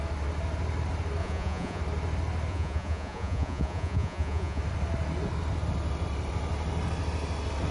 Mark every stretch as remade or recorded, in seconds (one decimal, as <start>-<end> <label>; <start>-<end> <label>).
0.0-1.2 recorded; 1.2-1.8 remade; 1.8-2.5 recorded; 2.5-4.6 remade; 4.6-7.7 recorded